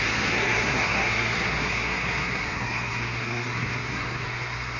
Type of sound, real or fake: fake